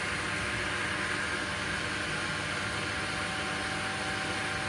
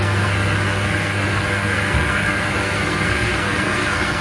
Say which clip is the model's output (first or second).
second